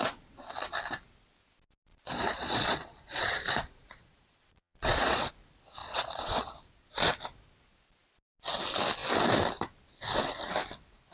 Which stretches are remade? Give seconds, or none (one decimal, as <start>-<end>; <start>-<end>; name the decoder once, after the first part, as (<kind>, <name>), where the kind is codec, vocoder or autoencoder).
1.9-5.3 (vocoder, Vocos); 5.8-7.1